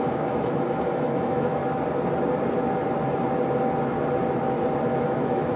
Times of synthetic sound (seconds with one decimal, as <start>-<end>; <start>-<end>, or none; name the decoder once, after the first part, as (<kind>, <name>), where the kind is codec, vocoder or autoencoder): 0.0-1.6 (autoencoder, DAC-VAE); 5.0-5.6